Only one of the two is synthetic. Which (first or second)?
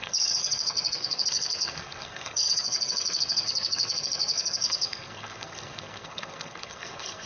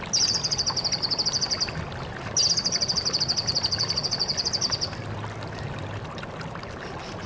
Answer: first